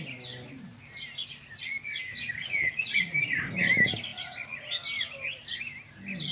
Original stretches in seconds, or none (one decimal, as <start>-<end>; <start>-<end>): 0.0-2.4; 3.4-4.1; 4.7-6.3